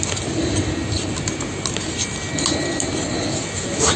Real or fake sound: real